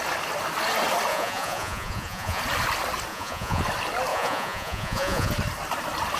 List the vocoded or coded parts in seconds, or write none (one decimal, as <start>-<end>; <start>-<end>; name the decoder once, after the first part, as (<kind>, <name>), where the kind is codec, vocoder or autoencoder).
1.1-2.4 (vocoder, Vocos); 3.1-3.6; 4.1-5.3